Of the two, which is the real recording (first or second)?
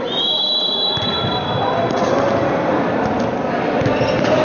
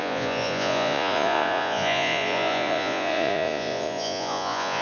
first